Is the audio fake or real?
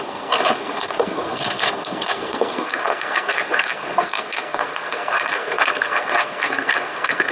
fake